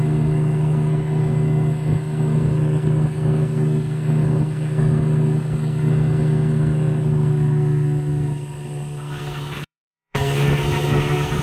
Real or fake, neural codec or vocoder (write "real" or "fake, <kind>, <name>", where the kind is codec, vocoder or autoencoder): fake, codec, SNAC